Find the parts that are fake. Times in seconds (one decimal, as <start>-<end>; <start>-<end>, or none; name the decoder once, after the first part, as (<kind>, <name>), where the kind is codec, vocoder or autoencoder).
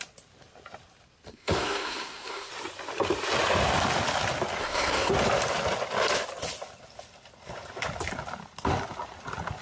1.3-2.5 (codec, SNAC); 4.6-5.1